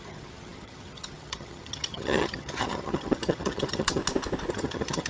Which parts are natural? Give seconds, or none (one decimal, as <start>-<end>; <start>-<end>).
4.0-4.5